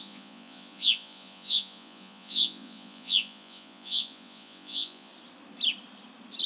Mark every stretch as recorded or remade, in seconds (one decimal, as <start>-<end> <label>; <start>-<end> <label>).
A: 0.0-5.1 remade; 5.1-6.5 recorded